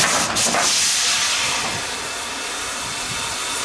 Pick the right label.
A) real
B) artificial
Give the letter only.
A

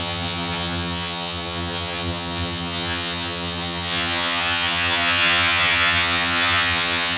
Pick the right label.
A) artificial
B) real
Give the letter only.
A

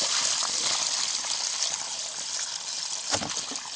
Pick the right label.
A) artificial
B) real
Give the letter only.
B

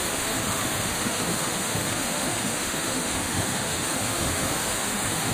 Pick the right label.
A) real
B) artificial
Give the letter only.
B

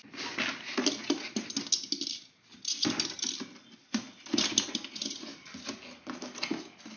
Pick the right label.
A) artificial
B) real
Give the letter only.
B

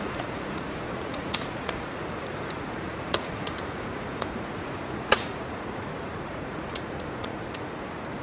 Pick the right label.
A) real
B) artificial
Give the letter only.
B